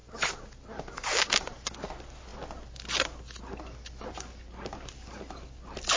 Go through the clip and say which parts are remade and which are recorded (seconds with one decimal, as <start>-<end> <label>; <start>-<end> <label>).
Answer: 0.0-6.0 recorded